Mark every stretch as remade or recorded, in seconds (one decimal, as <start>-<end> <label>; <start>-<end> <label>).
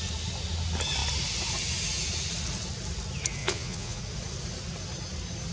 0.0-3.4 recorded; 3.4-4.0 remade; 4.0-5.5 recorded